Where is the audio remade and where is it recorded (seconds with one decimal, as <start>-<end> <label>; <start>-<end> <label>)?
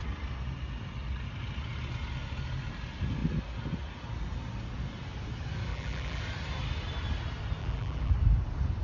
0.0-5.7 recorded; 5.7-6.2 remade; 6.2-7.6 recorded; 7.6-8.1 remade; 8.1-8.8 recorded